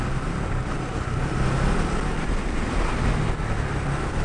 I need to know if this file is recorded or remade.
recorded